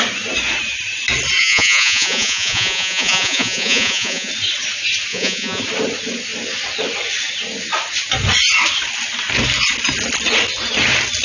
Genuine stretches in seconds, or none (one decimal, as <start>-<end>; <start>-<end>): 0.0-1.4; 4.3-5.1; 5.6-11.2